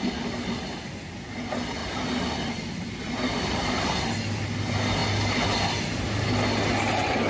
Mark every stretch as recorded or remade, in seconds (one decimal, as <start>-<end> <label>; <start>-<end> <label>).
0.0-7.3 recorded